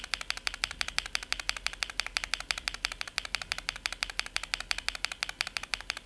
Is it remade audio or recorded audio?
recorded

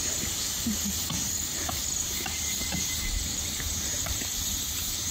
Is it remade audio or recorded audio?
remade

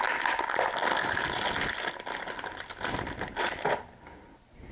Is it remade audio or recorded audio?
recorded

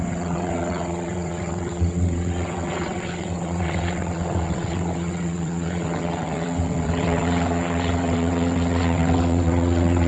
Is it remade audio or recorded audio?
remade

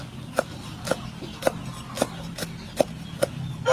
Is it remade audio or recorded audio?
recorded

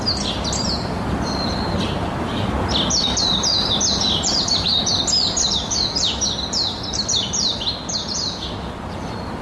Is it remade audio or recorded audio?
remade